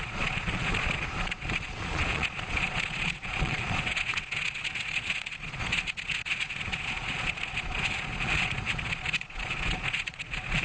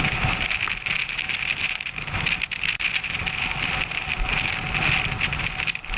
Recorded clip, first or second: second